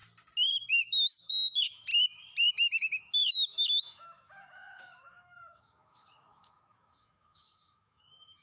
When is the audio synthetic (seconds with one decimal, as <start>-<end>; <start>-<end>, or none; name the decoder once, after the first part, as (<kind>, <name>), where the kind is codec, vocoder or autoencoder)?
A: 0.7-1.9 (autoencoder, DAC-VAE); 2.5-8.4